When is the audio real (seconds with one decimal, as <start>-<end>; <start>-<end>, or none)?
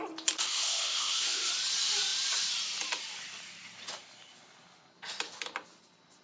0.0-0.4; 1.5-6.2